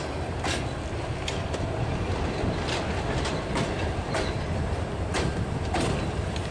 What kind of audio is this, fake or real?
real